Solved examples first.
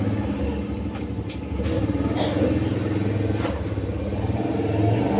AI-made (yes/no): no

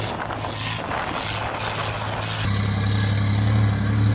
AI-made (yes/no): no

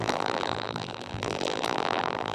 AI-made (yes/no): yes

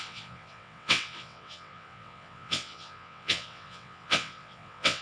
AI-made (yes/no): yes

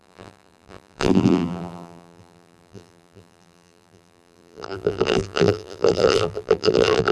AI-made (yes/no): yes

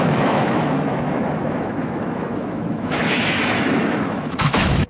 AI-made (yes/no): yes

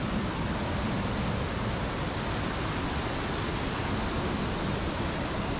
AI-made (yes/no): no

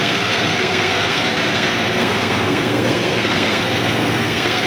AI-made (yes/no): yes